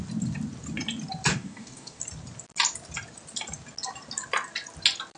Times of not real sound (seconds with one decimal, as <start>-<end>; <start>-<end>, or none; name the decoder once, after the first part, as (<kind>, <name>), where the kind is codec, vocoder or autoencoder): 1.3-2.0 (codec, DAC)